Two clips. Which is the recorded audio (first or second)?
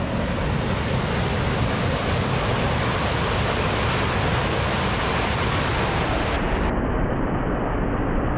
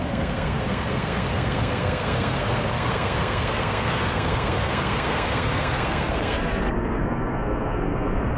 first